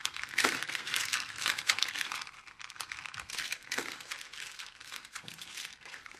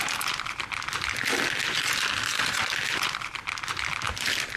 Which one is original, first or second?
second